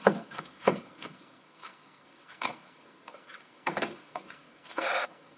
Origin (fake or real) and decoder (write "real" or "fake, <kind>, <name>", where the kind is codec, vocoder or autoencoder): fake, codec, SNAC